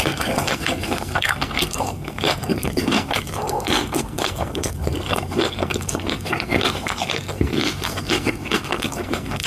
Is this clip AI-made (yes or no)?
yes